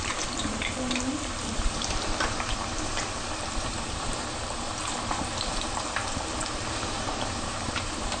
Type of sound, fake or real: fake